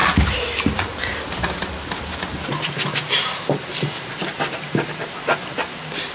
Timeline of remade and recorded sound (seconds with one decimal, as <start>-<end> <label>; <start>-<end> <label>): 0.0-6.1 recorded

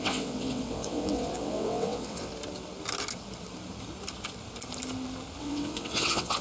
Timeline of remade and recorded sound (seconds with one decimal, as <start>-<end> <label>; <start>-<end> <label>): 0.0-2.3 remade; 2.3-5.4 recorded; 5.4-6.4 remade